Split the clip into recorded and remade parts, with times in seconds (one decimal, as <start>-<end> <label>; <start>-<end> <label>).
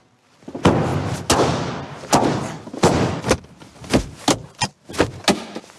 0.0-5.8 recorded